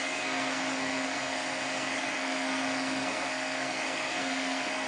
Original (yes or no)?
no